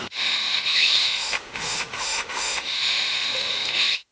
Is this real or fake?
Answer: fake